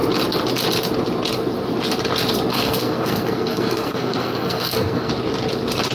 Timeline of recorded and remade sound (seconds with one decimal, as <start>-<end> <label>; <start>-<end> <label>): 0.0-2.5 recorded; 2.5-5.1 remade; 5.1-5.9 recorded